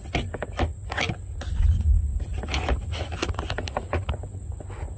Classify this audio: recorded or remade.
recorded